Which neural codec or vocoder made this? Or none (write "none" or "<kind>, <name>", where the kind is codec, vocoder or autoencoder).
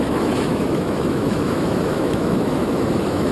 autoencoder, DAC-VAE